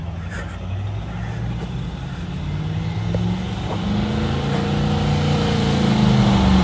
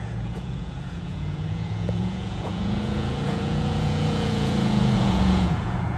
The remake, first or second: second